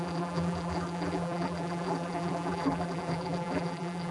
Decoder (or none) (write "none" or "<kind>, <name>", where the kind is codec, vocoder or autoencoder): vocoder, BigVGAN v2